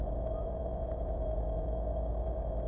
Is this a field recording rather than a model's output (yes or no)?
no